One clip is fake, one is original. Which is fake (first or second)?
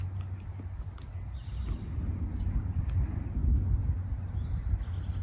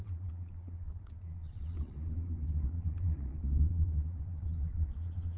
second